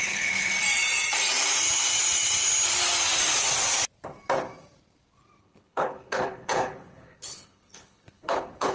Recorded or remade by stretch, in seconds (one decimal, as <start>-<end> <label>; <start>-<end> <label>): 0.0-0.5 remade; 0.5-5.4 recorded; 5.4-8.7 remade